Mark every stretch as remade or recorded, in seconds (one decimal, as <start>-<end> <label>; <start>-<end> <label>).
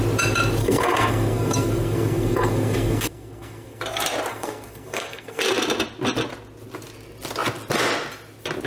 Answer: 0.0-0.6 recorded; 0.6-3.8 remade; 3.8-4.3 recorded; 4.3-5.4 remade; 5.4-8.7 recorded